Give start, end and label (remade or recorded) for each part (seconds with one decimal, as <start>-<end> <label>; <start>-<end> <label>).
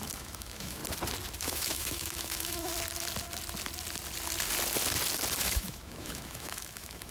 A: 0.0-0.8 remade; 0.8-1.4 recorded; 1.4-2.7 remade; 2.7-5.4 recorded; 5.4-7.1 remade